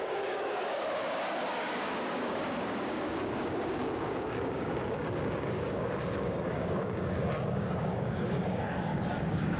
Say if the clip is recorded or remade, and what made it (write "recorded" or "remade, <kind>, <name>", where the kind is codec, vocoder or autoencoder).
remade, codec, DAC